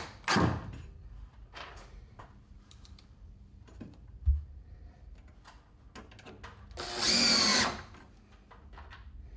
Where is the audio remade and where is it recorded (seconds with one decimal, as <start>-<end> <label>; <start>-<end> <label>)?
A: 0.0-1.4 recorded; 1.4-5.2 remade; 5.2-7.5 recorded; 7.5-8.0 remade; 8.0-9.4 recorded